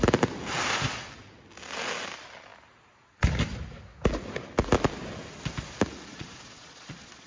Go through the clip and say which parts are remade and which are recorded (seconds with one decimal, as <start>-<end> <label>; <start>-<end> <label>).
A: 0.0-6.1 recorded; 6.1-7.3 remade